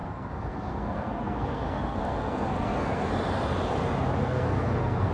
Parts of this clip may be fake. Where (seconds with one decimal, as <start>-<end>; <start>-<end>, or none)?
0.0-3.1; 4.2-5.1